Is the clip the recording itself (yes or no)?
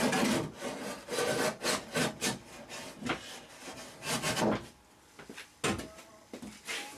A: yes